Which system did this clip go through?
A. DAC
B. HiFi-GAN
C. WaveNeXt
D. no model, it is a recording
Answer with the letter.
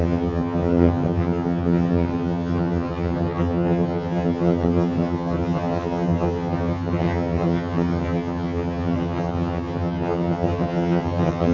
B